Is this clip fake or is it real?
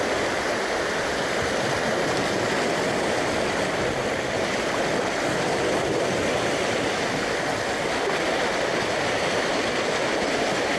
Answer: real